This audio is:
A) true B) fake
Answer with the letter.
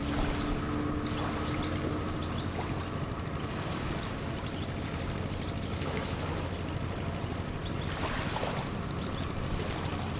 A